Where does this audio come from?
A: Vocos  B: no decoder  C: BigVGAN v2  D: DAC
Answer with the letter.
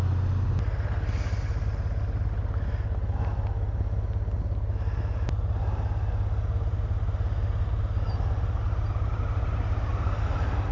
B